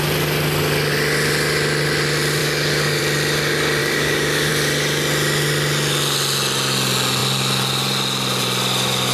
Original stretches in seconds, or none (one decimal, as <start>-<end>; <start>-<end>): 0.0-2.4; 3.0-3.8; 4.5-9.1